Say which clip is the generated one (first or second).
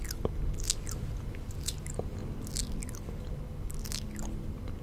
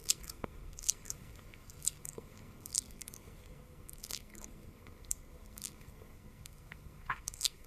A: second